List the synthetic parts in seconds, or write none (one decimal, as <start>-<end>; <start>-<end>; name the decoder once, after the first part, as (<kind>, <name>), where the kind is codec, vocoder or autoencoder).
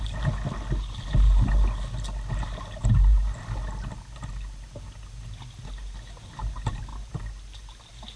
none